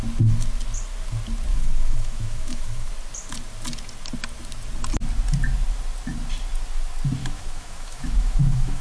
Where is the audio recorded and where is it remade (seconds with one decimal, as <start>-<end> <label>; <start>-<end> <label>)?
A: 0.0-1.5 recorded; 1.5-2.9 remade; 2.9-7.2 recorded; 7.2-8.8 remade